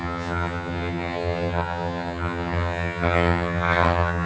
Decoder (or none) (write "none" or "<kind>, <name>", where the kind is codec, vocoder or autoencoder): vocoder, HiFi-GAN